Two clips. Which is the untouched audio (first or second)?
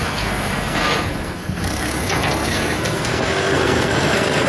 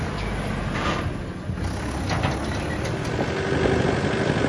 second